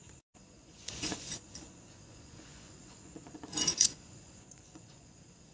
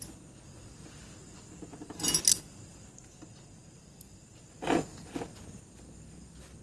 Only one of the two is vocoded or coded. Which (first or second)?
first